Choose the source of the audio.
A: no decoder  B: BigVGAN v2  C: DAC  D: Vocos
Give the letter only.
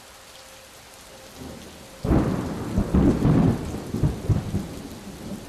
A